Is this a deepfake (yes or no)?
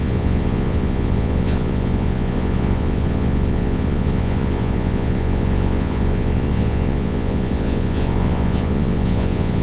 yes